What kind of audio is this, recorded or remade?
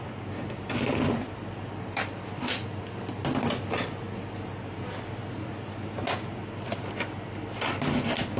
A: recorded